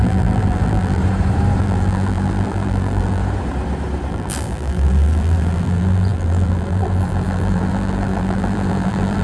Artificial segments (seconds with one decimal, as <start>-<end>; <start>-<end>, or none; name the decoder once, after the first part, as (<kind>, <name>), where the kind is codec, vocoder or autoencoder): 0.0-1.0 (vocoder, BigVGAN v2); 1.6-3.2; 4.1-9.2